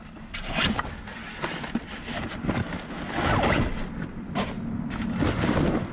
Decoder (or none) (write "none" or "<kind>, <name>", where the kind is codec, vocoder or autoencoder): none